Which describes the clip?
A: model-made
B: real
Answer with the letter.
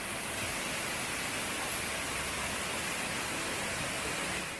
B